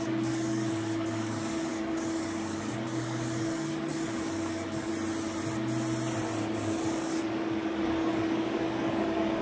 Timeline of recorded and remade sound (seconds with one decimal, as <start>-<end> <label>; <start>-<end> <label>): 0.0-4.9 remade; 4.9-6.4 recorded; 6.4-9.4 remade